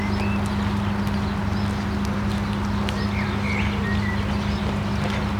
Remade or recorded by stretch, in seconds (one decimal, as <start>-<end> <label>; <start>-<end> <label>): 0.0-5.4 recorded